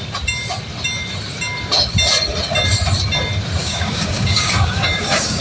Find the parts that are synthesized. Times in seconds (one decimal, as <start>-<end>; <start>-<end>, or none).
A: 3.6-5.4